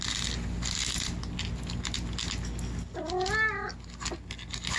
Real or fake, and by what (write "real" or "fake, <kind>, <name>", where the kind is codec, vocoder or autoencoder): real